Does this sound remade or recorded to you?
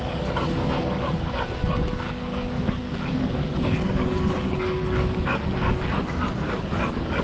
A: remade